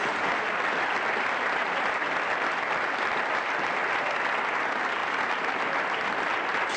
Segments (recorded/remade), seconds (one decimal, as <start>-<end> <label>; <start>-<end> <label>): 0.0-6.8 recorded